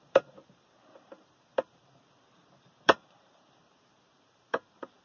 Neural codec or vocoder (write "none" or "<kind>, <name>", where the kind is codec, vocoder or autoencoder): vocoder, BigVGAN v2